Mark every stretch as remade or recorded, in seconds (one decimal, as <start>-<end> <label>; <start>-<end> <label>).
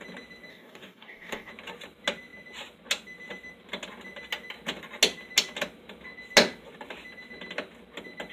0.0-0.5 recorded; 0.5-1.5 remade; 1.5-8.3 recorded